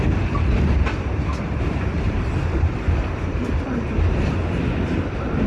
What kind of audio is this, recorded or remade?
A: remade